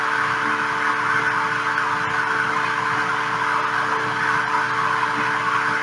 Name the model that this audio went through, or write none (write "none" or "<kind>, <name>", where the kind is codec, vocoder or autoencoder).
none